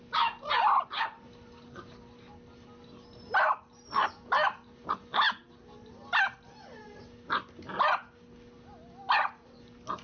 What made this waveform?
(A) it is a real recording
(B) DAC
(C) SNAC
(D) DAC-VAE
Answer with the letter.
A